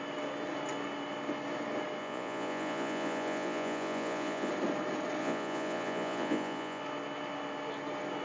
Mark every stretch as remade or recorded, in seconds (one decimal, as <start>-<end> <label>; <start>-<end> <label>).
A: 0.0-2.0 recorded; 2.0-4.5 remade; 4.5-5.2 recorded; 5.2-6.8 remade; 6.8-8.2 recorded

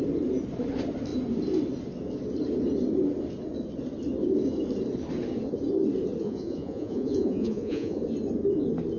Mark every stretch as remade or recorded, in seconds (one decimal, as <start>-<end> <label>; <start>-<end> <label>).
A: 0.0-6.2 recorded; 6.2-8.0 remade; 8.0-9.0 recorded

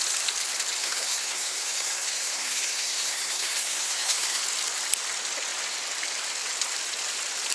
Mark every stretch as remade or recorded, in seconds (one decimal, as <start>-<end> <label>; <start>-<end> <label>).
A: 0.0-0.8 recorded; 0.8-4.4 remade; 4.4-7.5 recorded